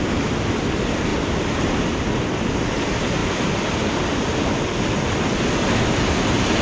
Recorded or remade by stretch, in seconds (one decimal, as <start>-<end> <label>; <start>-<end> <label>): 0.0-3.2 recorded; 3.2-4.7 remade; 4.7-6.6 recorded